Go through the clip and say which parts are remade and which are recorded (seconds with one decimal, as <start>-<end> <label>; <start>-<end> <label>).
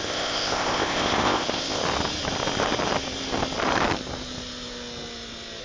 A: 0.0-1.8 remade; 1.8-5.6 recorded